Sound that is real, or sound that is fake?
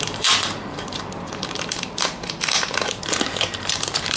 fake